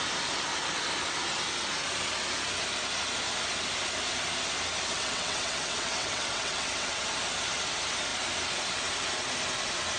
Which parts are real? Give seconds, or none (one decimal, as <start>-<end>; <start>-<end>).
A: 0.0-4.9; 7.0-10.0